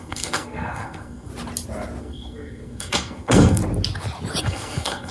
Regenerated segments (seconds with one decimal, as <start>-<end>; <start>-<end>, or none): 0.0-1.3; 2.0-3.6; 4.4-5.1

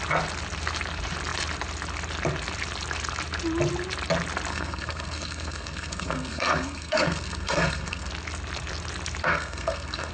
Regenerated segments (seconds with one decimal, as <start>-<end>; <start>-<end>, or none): 4.5-8.1; 9.2-10.1

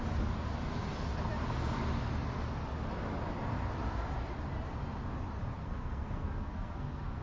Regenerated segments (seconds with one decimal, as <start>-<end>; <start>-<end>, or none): 5.6-7.2

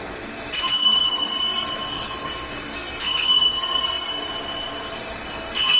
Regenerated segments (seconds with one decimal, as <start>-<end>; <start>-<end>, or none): 0.0-4.3; 4.9-5.8